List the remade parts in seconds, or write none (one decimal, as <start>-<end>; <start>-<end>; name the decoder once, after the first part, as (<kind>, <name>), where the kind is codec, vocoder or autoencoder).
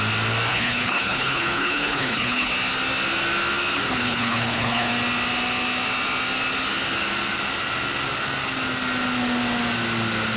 0.5-2.5 (codec, HILCodec); 4.0-4.9